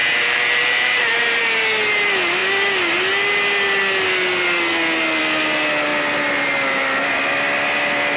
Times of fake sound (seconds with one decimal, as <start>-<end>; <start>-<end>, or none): 0.0-1.4